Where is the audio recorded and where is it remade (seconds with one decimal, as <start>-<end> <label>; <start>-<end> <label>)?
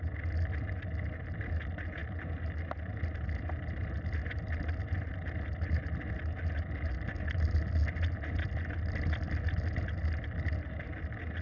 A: 0.0-11.4 recorded